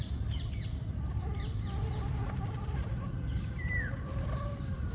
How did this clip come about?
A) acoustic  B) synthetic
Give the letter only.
B